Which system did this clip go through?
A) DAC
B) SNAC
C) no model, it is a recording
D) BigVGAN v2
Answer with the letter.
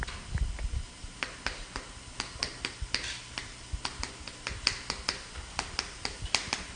D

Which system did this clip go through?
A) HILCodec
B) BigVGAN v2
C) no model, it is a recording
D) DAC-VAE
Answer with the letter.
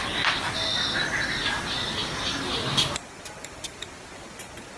C